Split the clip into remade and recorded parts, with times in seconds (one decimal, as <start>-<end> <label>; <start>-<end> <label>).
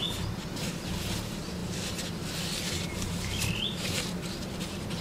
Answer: 0.0-5.0 recorded